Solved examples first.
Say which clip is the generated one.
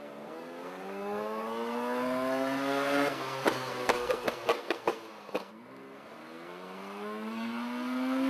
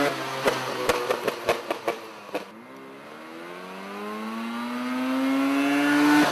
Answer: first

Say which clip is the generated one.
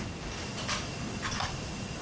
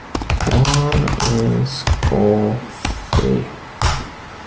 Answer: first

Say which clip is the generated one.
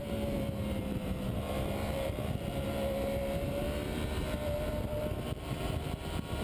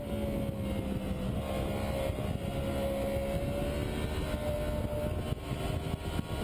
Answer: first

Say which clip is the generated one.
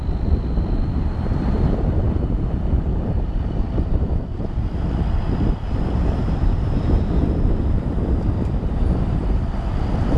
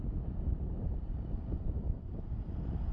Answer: first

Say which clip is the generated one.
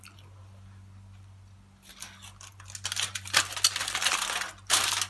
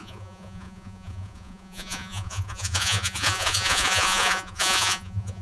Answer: second